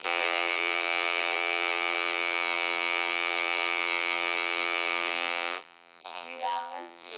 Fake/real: fake